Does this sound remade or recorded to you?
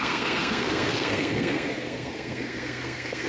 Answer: remade